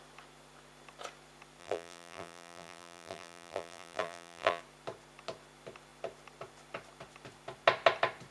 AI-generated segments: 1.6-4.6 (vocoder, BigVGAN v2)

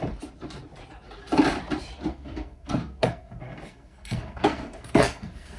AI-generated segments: 2.1-5.6 (codec, SNAC)

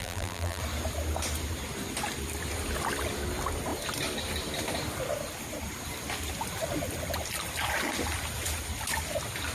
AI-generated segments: 0.0-0.6 (vocoder, BigVGAN v2)